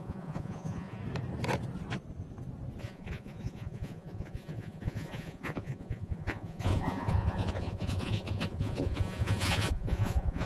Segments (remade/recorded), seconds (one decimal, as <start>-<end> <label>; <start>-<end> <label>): 0.0-1.0 remade; 1.0-2.8 recorded; 2.8-10.5 remade